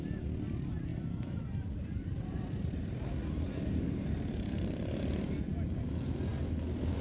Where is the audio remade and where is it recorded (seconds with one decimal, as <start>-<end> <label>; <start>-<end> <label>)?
0.0-0.9 recorded; 0.9-5.0 remade; 5.0-7.0 recorded